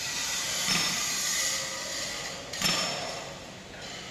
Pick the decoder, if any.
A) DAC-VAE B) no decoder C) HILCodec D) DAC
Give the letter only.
B